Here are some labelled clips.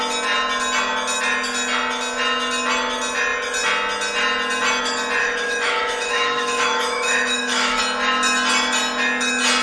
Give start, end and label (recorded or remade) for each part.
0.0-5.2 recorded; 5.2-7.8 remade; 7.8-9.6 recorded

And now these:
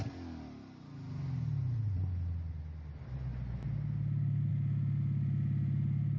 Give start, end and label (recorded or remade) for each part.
0.0-6.2 recorded